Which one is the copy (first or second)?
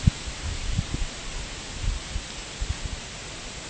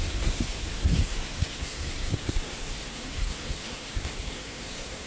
second